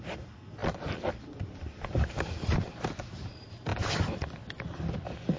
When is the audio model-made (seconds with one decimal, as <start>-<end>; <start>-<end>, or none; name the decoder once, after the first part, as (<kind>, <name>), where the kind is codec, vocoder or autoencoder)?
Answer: 0.6-2.1 (vocoder, BigVGAN v2); 3.7-4.2